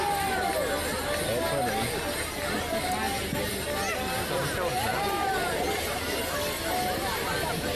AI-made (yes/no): no